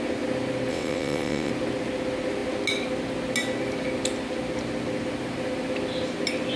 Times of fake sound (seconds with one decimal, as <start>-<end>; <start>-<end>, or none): 0.7-1.5